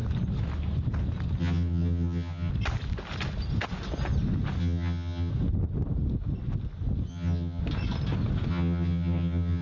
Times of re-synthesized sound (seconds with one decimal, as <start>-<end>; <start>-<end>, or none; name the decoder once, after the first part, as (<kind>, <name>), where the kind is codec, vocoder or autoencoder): 1.4-2.5 (vocoder, HiFi-GAN); 4.6-5.3; 7.1-7.6; 8.5-9.6